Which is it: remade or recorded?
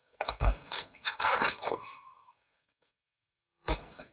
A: remade